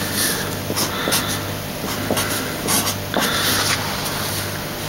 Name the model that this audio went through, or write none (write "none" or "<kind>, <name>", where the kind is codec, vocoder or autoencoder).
none